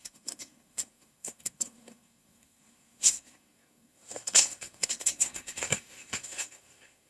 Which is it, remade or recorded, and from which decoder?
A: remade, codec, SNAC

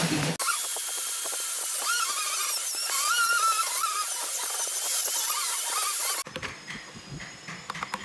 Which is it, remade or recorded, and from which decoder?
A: recorded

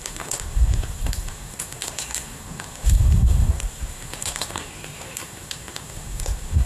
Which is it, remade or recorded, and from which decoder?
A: remade, codec, SNAC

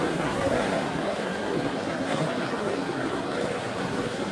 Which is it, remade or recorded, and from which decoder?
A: remade, codec, SNAC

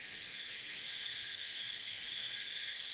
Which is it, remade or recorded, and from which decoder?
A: remade, codec, SNAC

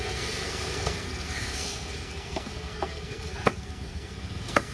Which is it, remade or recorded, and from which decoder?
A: remade, codec, SNAC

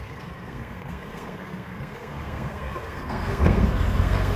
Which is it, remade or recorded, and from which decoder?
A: remade, codec, SNAC